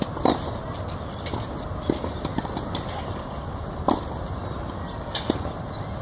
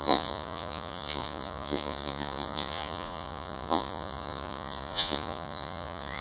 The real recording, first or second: first